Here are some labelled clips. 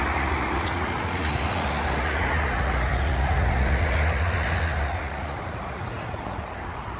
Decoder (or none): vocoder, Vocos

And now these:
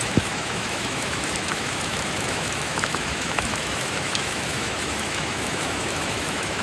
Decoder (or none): autoencoder, DAC-VAE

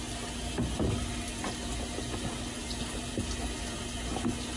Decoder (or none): none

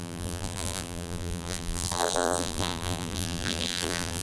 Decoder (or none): vocoder, BigVGAN v2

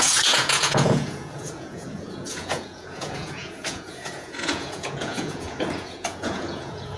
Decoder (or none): vocoder, Vocos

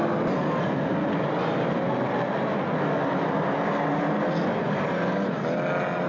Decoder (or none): none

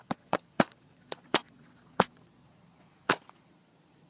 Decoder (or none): vocoder, Vocos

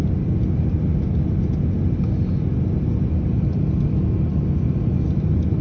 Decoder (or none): none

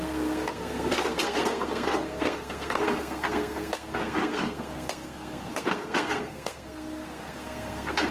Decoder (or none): codec, SNAC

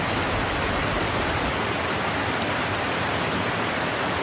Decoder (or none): none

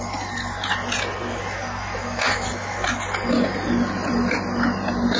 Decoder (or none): none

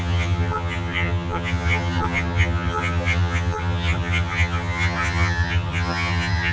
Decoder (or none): vocoder, HiFi-GAN